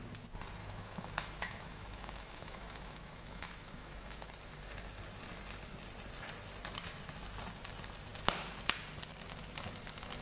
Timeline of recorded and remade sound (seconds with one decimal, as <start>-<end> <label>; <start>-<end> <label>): 0.0-0.6 recorded; 0.6-4.3 remade; 4.3-10.2 recorded